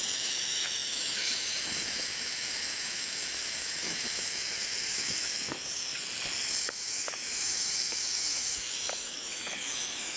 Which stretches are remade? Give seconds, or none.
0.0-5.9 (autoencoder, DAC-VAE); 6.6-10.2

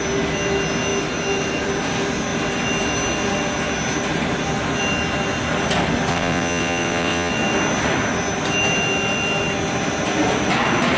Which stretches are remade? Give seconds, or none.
6.1-7.3 (vocoder, WaveNeXt)

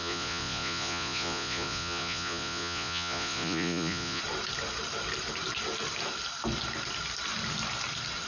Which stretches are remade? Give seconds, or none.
0.0-4.2 (vocoder, Vocos)

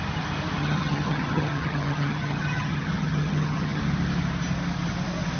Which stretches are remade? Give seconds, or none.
0.6-3.8 (vocoder, HiFi-GAN)

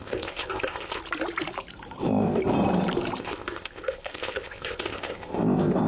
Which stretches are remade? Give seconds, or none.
0.0-1.0 (codec, ZipCodec); 2.0-2.4; 3.2-5.9